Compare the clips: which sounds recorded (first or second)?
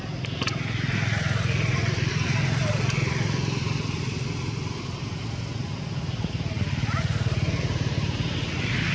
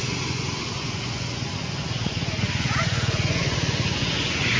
first